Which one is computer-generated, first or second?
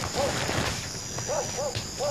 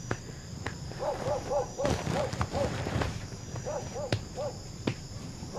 second